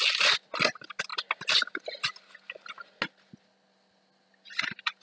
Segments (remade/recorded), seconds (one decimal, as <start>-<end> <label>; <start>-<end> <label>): 0.0-5.0 recorded